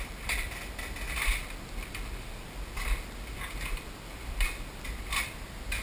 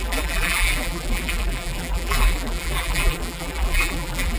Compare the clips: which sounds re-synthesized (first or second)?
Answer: second